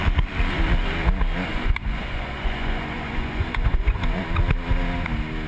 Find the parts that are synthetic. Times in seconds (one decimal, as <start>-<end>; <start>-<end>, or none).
1.5-4.2